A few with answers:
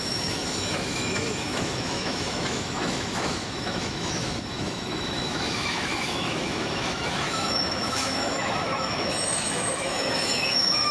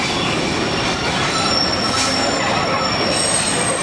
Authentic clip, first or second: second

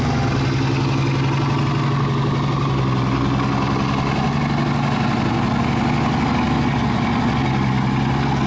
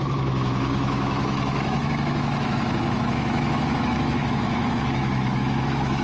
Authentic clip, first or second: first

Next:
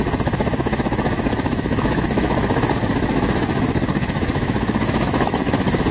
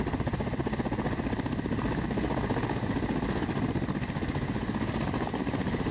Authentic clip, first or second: second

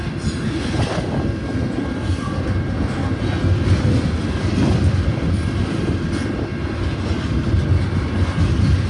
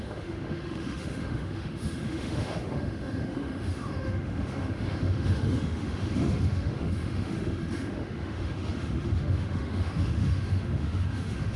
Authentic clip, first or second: first